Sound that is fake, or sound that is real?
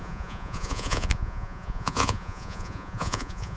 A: fake